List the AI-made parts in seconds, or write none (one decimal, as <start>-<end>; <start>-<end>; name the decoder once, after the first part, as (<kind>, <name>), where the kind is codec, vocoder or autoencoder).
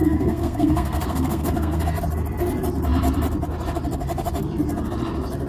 0.0-1.8 (codec, SNAC)